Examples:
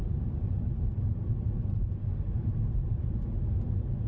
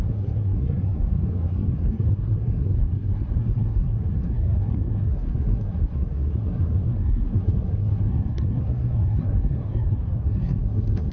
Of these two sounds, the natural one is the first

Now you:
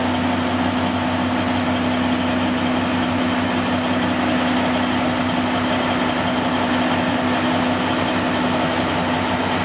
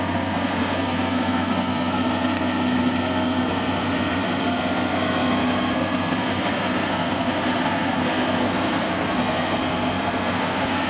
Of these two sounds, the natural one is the first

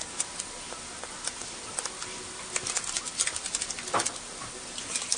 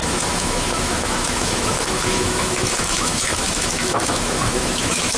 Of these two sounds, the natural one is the first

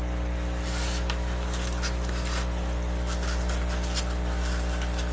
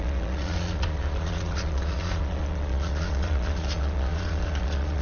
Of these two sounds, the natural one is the first